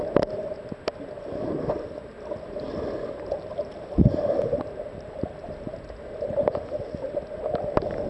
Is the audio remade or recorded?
recorded